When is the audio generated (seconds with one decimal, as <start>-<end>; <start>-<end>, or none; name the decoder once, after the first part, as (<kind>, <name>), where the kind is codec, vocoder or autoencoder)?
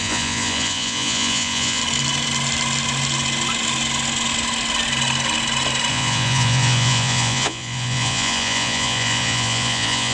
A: 0.0-1.8 (vocoder, Vocos); 5.9-10.1